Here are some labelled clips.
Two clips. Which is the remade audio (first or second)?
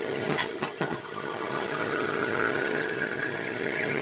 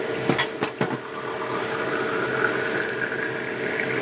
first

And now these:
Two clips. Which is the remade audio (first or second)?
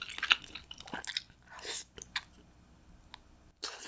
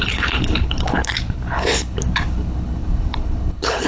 second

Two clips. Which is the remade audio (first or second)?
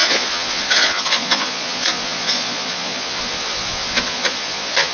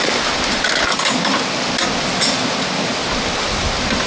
first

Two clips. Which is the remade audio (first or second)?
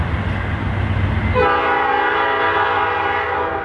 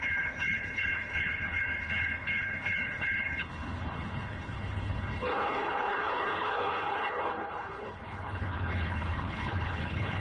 second